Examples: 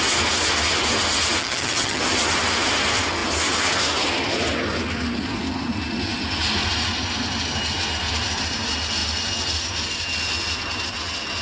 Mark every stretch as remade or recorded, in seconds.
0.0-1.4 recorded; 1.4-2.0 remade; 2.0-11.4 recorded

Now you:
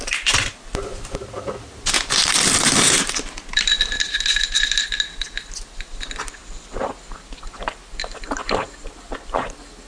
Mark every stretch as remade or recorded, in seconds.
0.0-9.9 recorded

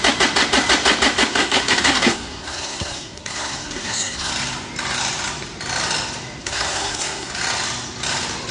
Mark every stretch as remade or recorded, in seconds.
0.0-1.3 recorded; 1.3-4.3 remade; 4.3-6.4 recorded; 6.4-7.3 remade; 7.3-8.5 recorded

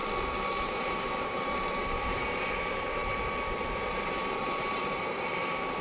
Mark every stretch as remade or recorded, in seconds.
0.0-0.6 recorded; 0.6-3.0 remade; 3.0-4.4 recorded; 4.4-5.8 remade

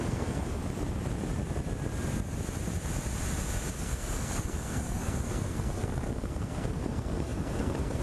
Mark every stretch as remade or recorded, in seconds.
0.0-0.6 remade; 0.6-3.7 recorded; 3.7-8.0 remade

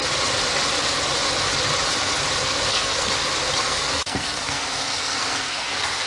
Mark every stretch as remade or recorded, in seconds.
0.0-2.4 recorded; 2.4-3.1 remade; 3.1-3.6 recorded; 3.6-6.1 remade